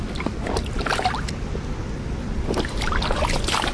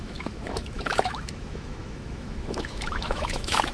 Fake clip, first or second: second